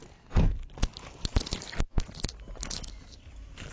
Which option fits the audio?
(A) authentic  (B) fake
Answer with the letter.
A